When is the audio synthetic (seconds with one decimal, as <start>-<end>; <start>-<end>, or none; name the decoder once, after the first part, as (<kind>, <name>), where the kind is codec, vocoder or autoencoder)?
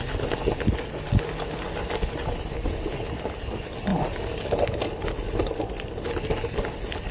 none